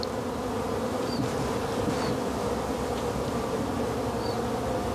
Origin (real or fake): real